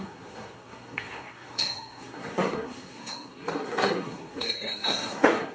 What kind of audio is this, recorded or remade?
remade